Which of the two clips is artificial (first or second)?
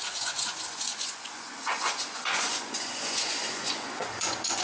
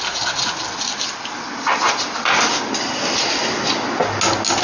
first